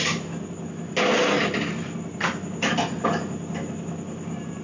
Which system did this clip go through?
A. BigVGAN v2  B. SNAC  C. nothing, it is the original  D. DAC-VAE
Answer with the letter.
C